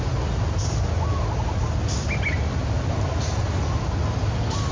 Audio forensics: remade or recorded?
recorded